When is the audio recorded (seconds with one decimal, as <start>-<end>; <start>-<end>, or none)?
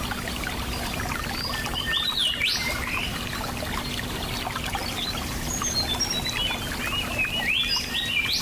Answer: 0.0-8.4